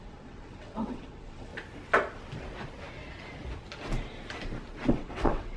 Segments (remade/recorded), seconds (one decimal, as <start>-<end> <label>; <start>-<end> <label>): 0.0-1.5 remade; 1.5-4.9 recorded; 4.9-5.6 remade